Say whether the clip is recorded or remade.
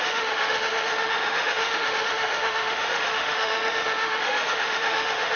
remade